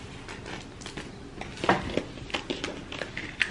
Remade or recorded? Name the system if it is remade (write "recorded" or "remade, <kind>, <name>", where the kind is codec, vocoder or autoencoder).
recorded